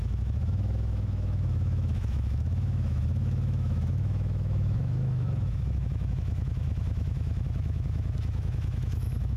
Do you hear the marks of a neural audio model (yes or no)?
yes